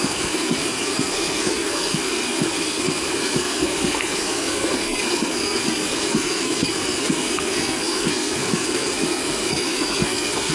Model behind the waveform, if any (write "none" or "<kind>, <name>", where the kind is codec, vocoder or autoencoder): codec, SNAC